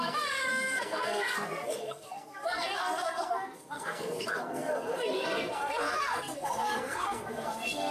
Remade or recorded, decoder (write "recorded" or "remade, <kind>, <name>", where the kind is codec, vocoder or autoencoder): remade, codec, SNAC